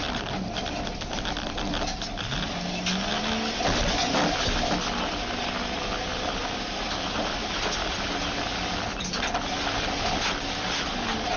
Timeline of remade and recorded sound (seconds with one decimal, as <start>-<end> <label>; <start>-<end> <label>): 0.0-11.4 recorded